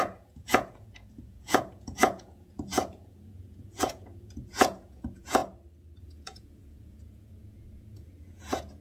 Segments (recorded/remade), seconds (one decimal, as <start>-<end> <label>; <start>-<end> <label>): 0.0-5.4 remade; 5.4-6.0 recorded; 6.0-8.8 remade